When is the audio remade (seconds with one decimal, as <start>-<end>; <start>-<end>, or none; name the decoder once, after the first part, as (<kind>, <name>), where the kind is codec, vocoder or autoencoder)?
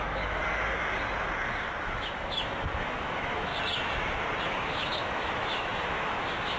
0.0-0.4 (autoencoder, DAC-VAE); 1.8-3.5; 4.5-6.6